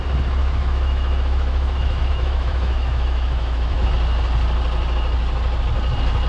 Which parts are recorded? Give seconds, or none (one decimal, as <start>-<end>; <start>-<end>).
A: 0.0-0.4; 3.9-6.3